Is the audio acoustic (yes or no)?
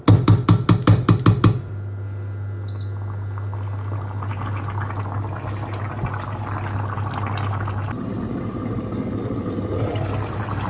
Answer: yes